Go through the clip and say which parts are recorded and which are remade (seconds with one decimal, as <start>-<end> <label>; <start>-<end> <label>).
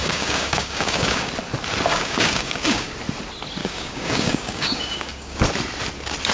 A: 0.0-1.3 remade; 1.3-1.9 recorded; 1.9-2.9 remade; 2.9-3.6 recorded; 3.6-5.4 remade; 5.4-6.3 recorded